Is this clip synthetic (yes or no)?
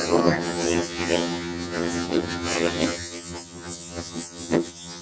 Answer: yes